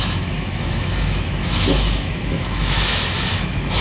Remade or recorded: remade